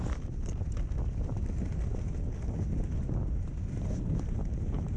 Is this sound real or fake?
real